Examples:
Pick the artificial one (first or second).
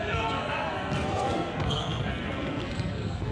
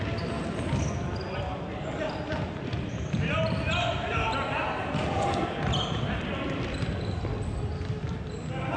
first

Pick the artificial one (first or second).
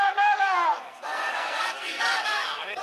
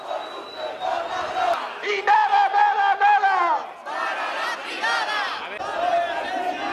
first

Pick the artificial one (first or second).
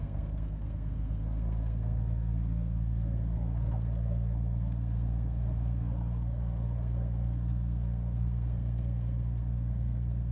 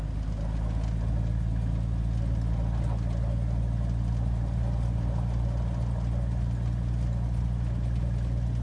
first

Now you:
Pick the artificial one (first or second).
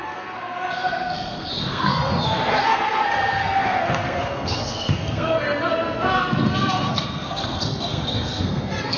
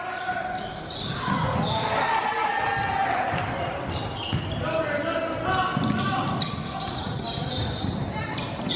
first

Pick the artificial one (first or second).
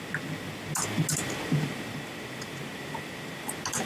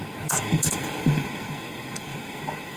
second